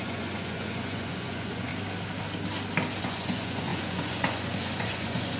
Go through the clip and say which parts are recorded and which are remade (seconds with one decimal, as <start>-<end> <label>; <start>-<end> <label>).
0.0-1.7 remade; 1.7-3.0 recorded; 3.0-5.4 remade